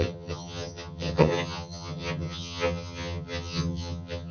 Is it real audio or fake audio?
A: fake